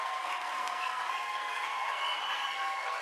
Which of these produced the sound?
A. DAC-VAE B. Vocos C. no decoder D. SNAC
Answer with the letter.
D